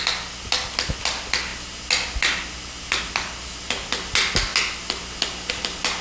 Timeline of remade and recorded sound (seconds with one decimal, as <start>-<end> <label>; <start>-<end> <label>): 0.0-6.0 recorded

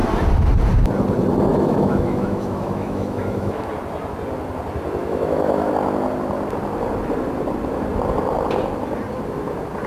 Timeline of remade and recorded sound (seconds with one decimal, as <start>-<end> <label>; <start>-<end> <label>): 0.0-1.5 recorded; 1.5-3.7 remade; 3.7-5.0 recorded; 5.0-5.7 remade; 5.7-9.9 recorded

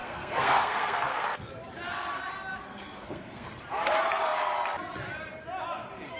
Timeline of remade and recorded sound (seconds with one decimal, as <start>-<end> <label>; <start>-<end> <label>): 0.0-1.5 remade; 1.5-2.6 recorded; 2.6-3.6 remade; 3.6-6.2 recorded

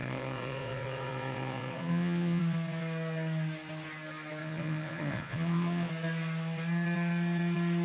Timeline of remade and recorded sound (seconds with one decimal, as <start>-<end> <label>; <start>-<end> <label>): 0.0-2.4 remade; 2.4-4.4 recorded; 4.4-5.9 remade; 5.9-7.8 recorded

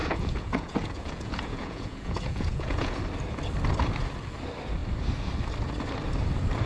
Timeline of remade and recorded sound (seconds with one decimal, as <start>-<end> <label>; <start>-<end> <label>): 0.0-3.0 remade; 3.0-6.7 recorded

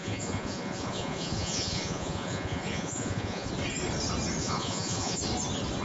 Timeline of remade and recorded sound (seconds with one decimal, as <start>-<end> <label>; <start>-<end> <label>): 0.0-3.5 remade; 3.5-4.4 recorded; 4.4-5.2 remade; 5.2-5.8 recorded

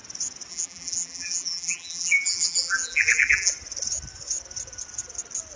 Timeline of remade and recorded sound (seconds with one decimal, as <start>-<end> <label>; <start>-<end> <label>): 0.0-0.5 recorded; 0.5-3.5 remade; 3.5-5.6 recorded

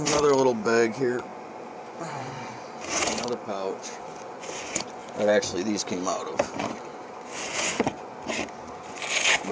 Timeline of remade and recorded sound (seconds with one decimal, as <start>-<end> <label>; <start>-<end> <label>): 0.0-9.5 remade